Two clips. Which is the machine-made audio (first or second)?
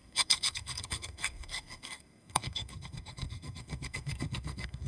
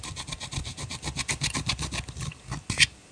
first